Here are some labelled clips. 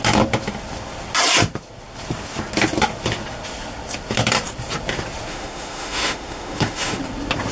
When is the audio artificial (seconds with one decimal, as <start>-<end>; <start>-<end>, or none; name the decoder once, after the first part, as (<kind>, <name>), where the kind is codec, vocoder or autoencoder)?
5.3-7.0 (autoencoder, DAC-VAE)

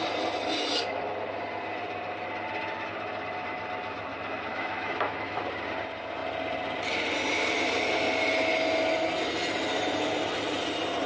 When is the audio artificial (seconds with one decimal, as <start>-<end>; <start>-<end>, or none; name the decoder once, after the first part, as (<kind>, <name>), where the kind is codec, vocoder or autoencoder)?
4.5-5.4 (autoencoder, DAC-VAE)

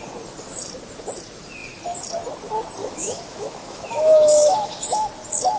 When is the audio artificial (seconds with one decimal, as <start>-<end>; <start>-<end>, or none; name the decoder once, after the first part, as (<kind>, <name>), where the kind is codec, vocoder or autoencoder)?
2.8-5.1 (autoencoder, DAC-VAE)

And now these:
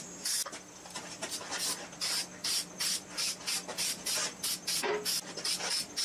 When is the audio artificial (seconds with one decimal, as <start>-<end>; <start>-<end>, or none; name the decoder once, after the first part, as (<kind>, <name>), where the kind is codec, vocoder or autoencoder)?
none